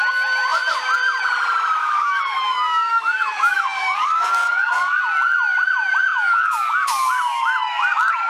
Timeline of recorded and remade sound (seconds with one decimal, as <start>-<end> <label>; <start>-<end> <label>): 0.0-1.8 recorded; 1.8-5.0 remade; 5.0-6.1 recorded; 6.1-8.3 remade